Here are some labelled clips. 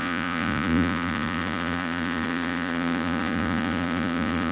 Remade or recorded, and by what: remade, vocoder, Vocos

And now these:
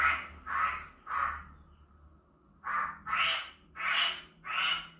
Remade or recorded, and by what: recorded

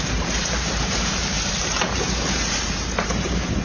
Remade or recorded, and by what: remade, vocoder, BigVGAN v2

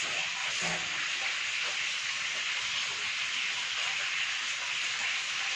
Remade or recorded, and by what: recorded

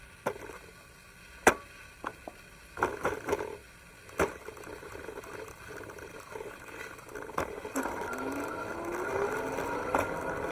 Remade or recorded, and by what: recorded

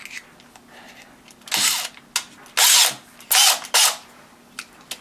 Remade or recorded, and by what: recorded